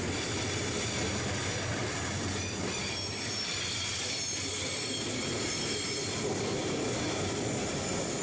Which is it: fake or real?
real